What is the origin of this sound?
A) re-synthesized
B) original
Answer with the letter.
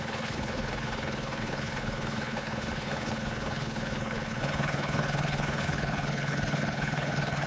A